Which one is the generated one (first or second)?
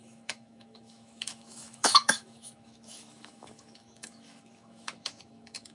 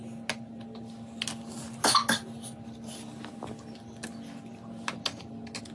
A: first